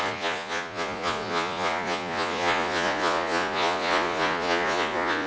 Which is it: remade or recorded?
remade